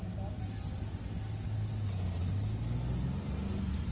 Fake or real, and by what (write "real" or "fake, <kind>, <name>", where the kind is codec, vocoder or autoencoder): real